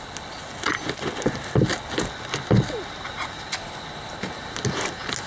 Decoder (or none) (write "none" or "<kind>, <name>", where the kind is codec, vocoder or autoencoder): none